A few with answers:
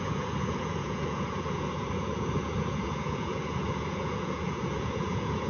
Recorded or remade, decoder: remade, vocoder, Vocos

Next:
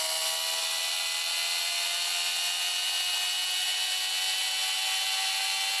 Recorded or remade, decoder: recorded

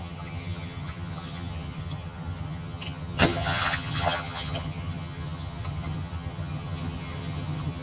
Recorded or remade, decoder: remade, vocoder, HiFi-GAN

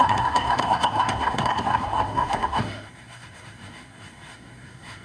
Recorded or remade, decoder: remade, codec, SNAC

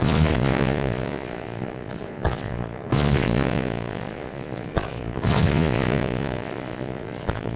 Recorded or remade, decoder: remade, vocoder, Vocos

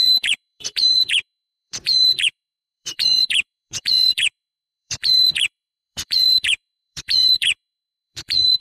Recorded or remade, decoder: remade, vocoder, Vocos